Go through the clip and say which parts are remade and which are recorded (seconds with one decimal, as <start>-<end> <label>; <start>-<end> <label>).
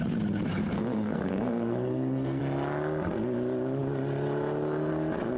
0.0-0.6 recorded; 0.6-2.4 remade; 2.4-5.4 recorded